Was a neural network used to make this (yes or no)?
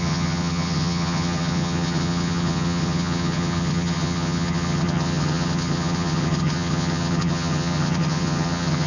yes